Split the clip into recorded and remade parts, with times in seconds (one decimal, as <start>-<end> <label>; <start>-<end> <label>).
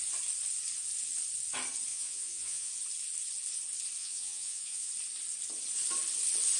0.0-1.9 recorded; 1.9-2.7 remade; 2.7-4.0 recorded; 4.0-4.9 remade; 4.9-6.6 recorded